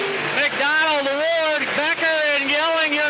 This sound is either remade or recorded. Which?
recorded